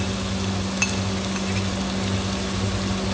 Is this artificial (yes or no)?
no